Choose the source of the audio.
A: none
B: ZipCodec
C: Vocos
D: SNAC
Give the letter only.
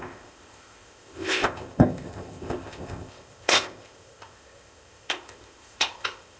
B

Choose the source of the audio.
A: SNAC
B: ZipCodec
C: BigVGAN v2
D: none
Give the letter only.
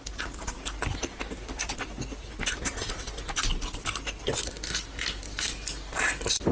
D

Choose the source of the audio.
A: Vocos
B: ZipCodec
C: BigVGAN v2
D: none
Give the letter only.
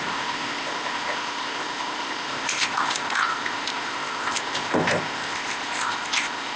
B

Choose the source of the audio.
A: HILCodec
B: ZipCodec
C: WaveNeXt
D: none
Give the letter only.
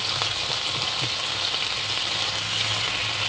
D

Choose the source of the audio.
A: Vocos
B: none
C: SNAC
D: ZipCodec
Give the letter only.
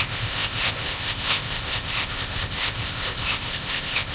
D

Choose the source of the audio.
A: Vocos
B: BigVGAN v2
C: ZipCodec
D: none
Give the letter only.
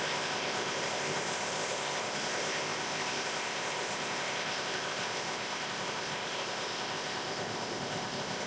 C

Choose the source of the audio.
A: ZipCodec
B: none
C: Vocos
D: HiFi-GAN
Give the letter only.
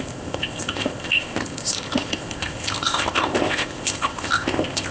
A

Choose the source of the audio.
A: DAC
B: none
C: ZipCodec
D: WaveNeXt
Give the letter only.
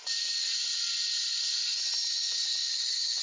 B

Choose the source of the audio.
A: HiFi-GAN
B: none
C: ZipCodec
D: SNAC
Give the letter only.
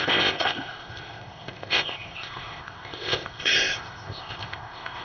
C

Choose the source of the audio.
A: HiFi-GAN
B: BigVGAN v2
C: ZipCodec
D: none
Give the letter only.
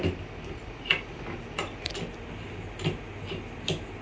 D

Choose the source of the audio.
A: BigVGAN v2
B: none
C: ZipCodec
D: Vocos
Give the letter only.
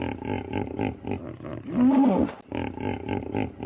B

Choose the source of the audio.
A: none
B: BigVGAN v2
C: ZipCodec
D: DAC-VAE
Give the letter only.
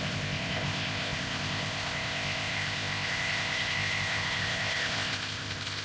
C